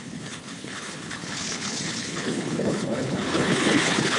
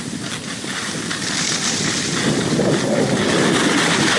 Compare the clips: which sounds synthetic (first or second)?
first